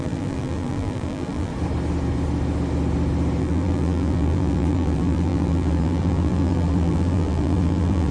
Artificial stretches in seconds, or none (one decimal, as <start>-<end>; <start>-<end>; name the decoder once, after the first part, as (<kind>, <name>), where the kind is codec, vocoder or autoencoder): 0.0-1.5 (vocoder, BigVGAN v2); 3.4-8.1